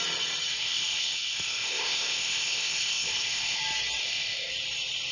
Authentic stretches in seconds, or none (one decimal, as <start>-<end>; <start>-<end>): 0.0-0.5; 3.6-4.0; 4.5-5.1